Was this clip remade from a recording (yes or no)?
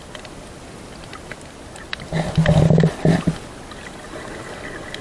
no